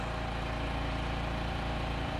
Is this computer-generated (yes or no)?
no